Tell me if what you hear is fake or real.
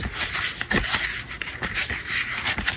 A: real